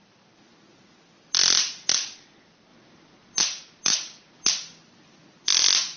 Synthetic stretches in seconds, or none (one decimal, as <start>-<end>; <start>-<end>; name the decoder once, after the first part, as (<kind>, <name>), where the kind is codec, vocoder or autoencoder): none